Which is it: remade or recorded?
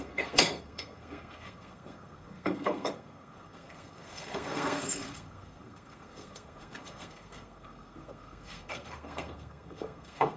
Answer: remade